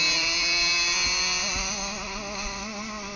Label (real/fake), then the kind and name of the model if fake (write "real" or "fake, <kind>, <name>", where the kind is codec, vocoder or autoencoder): real